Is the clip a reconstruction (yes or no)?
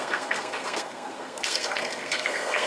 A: yes